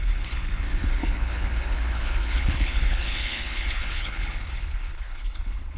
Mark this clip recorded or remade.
remade